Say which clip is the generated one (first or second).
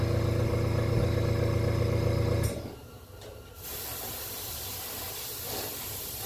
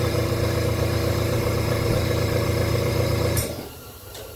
second